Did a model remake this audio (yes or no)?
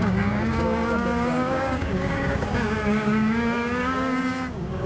yes